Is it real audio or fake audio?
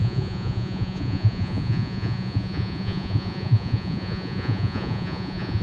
fake